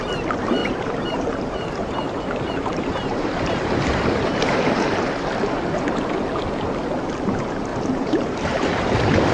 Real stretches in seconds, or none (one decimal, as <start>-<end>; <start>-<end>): 0.0-0.6; 5.1-7.7